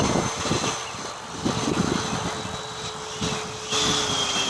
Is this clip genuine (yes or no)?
no